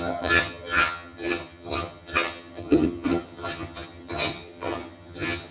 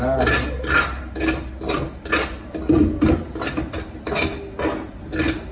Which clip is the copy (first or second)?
first